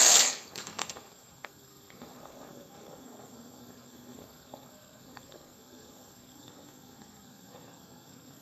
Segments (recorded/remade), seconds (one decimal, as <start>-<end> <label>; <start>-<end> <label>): 0.0-8.4 remade